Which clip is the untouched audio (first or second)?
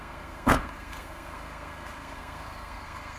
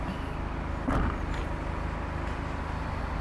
second